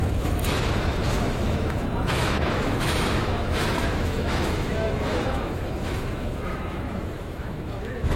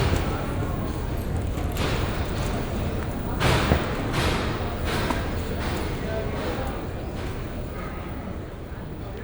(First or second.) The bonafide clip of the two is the second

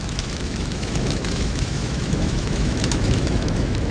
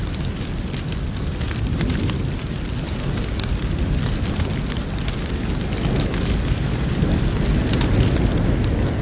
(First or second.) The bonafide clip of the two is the second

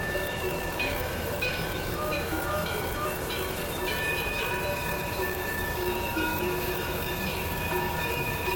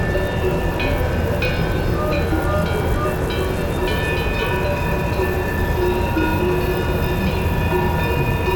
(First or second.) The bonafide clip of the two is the second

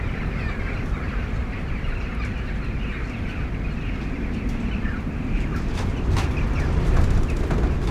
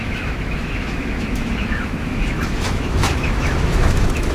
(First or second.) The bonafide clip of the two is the first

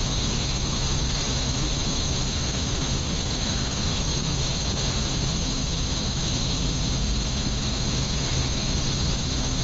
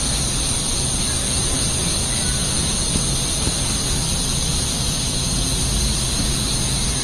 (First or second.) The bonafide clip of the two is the second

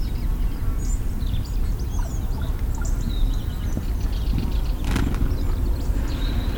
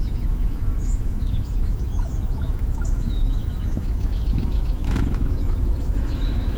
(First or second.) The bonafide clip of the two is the first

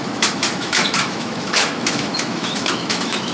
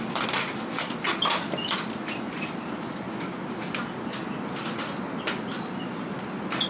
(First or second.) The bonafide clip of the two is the second